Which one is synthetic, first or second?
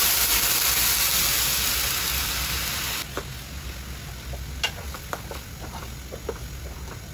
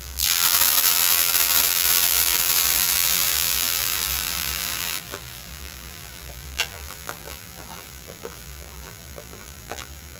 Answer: second